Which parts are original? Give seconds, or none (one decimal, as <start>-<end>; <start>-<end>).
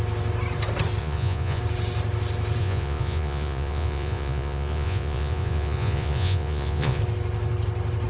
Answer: 0.0-1.0; 1.6-2.6; 7.0-8.1